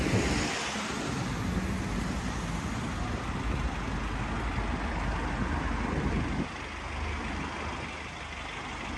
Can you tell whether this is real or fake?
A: real